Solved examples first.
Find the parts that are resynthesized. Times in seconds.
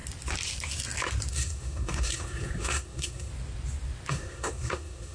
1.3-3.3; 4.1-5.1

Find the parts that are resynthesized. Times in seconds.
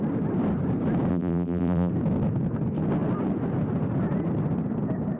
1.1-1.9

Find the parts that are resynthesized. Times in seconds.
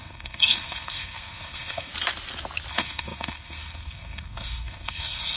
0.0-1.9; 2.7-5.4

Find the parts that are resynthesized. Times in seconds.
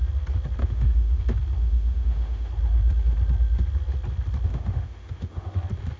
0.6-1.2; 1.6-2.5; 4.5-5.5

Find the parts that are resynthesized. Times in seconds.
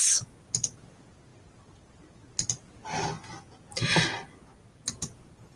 none